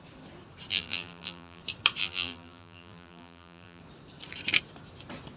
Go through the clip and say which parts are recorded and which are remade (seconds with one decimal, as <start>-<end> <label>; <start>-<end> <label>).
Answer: 0.0-0.7 recorded; 0.7-1.6 remade; 1.6-2.0 recorded; 2.0-3.8 remade; 3.8-5.4 recorded